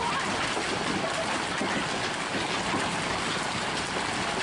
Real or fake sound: real